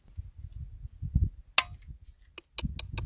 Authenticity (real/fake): real